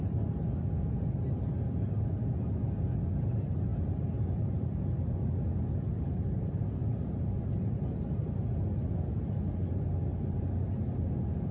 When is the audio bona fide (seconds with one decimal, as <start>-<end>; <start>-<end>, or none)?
0.0-6.8; 8.2-10.1; 11.1-11.5